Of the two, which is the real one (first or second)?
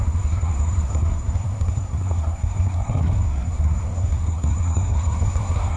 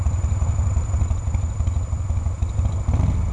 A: second